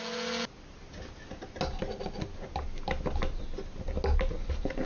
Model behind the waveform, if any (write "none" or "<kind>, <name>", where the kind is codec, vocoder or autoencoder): none